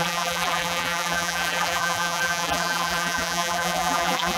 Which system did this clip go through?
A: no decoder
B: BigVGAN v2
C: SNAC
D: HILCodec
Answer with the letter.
B